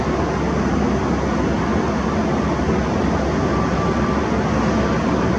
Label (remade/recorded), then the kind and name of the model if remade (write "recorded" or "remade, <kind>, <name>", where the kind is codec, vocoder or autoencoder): recorded